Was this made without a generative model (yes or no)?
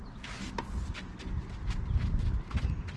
yes